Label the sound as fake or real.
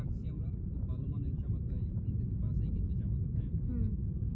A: fake